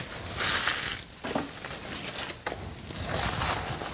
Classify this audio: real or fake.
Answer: real